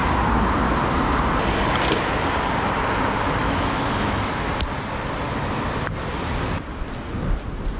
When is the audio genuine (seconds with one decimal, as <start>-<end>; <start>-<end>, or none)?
0.0-3.4; 4.3-7.8